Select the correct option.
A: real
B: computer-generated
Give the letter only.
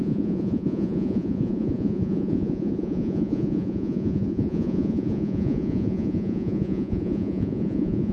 B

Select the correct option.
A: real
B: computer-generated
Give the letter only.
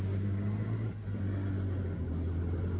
A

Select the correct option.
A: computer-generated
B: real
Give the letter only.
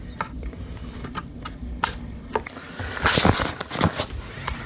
B